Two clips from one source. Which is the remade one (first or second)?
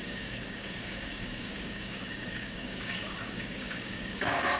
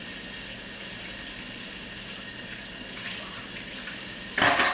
first